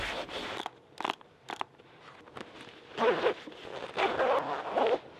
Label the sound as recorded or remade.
recorded